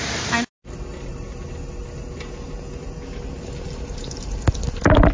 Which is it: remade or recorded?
recorded